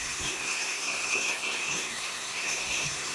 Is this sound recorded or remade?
remade